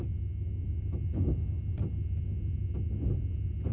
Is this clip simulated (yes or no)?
no